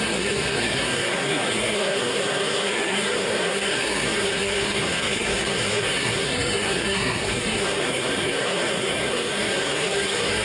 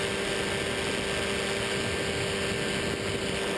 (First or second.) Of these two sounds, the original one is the second